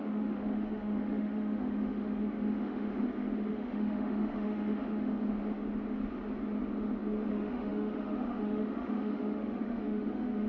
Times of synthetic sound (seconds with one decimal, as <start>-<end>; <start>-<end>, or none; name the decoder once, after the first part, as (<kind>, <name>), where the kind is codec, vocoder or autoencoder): 0.0-3.0 (autoencoder, DAC-VAE); 3.5-5.1; 7.3-10.5